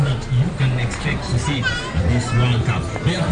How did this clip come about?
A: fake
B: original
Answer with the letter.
B